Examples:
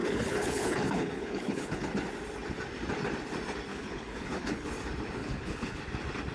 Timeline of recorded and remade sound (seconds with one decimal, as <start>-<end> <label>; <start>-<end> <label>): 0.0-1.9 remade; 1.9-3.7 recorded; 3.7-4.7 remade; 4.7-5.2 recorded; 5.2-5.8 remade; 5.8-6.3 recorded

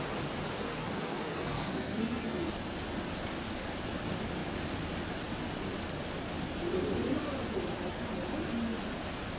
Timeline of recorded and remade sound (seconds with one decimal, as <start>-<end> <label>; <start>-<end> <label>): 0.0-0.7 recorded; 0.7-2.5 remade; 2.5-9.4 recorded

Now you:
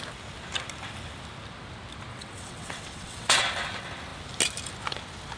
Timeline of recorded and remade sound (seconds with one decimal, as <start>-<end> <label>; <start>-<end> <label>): 0.0-2.1 recorded; 2.1-3.4 remade; 3.4-5.4 recorded

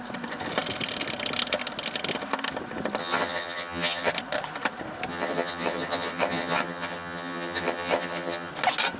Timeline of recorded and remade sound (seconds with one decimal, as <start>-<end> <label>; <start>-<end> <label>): 0.0-3.0 recorded; 3.0-4.1 remade; 4.1-5.1 recorded; 5.1-8.5 remade; 8.5-9.0 recorded

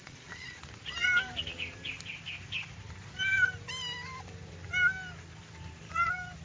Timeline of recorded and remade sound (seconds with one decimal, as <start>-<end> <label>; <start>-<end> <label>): 0.0-0.6 remade; 0.6-6.4 recorded